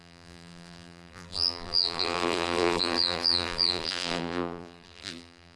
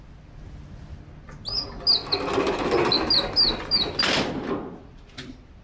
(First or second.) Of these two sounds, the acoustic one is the second